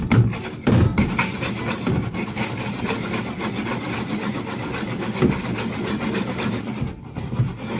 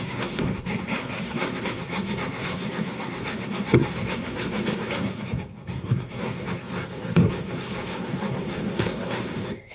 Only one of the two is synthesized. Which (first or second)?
second